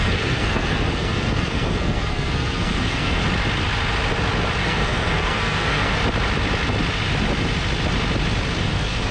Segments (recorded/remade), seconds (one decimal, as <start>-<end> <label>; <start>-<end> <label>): 0.0-3.2 remade; 3.2-4.6 recorded; 4.6-6.0 remade; 6.0-8.6 recorded; 8.6-9.1 remade